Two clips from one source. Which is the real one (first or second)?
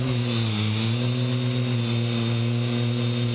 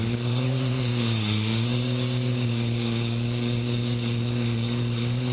first